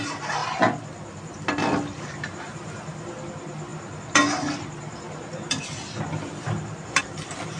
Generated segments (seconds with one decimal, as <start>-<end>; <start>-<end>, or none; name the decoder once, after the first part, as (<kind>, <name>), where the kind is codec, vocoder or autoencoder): 0.0-0.4 (vocoder, BigVGAN v2); 2.0-7.6